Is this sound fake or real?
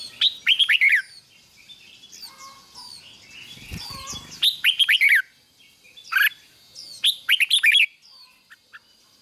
real